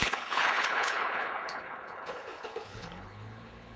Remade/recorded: remade